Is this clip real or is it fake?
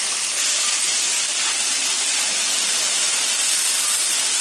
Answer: real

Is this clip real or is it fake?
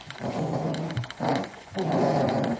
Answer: fake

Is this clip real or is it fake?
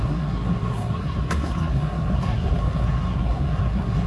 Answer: fake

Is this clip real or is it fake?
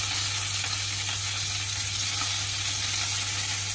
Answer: real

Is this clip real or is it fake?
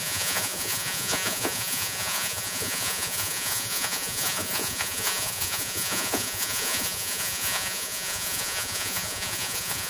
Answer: fake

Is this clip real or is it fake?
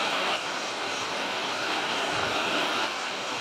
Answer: fake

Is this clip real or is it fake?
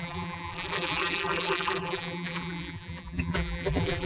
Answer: fake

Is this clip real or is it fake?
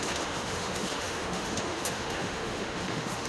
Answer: fake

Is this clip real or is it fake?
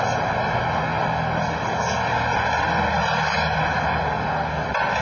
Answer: real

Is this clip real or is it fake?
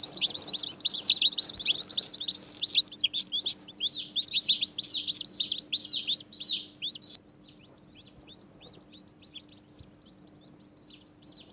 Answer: real